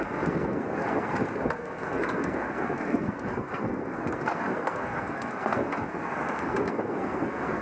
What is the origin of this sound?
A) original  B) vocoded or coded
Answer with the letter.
B